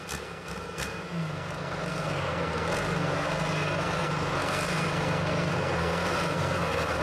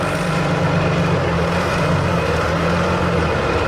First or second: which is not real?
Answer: first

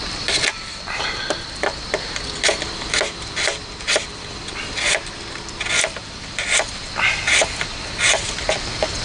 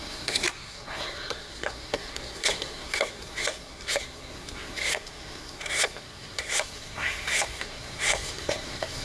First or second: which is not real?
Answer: second